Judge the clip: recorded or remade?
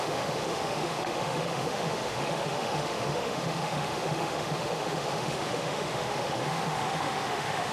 remade